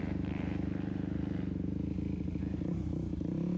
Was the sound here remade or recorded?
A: remade